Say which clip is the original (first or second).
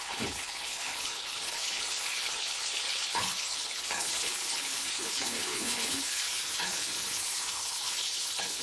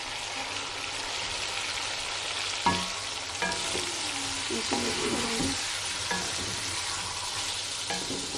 second